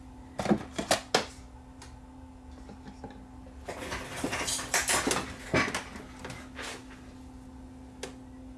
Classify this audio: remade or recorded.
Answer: recorded